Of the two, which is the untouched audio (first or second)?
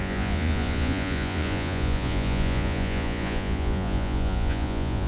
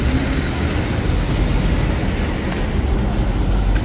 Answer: second